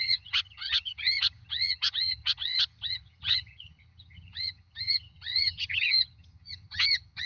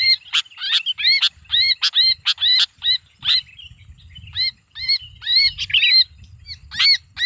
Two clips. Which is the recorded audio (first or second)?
second